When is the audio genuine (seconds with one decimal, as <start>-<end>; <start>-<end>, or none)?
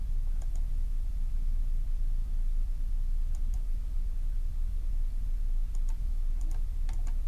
none